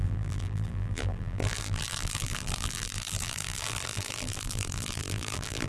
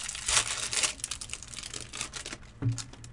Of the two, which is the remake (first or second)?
first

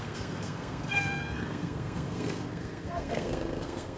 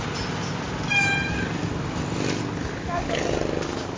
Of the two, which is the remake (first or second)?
first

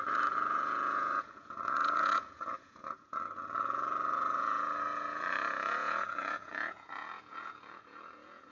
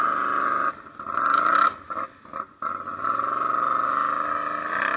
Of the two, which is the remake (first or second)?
first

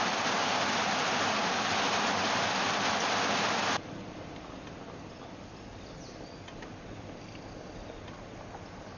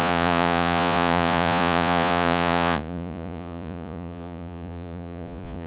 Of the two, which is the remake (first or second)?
second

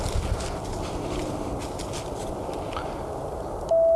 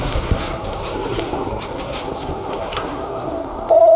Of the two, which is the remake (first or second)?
second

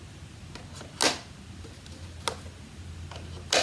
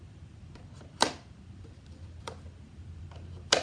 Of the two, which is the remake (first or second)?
second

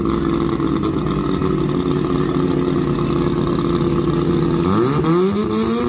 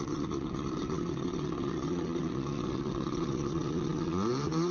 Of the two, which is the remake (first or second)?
second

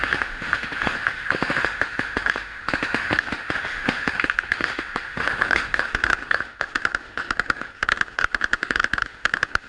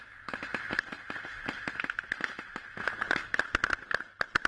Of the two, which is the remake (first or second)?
first